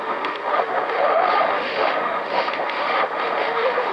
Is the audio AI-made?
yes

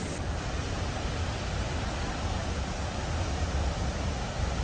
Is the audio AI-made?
no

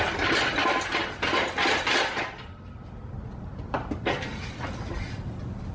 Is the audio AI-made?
no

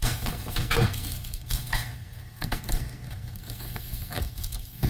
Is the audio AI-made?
yes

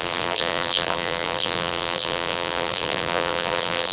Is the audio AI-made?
yes